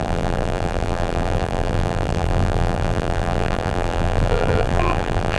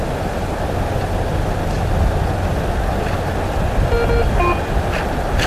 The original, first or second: second